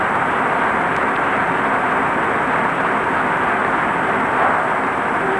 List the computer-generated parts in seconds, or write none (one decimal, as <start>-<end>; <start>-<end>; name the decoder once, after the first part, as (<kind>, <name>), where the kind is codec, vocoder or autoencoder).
none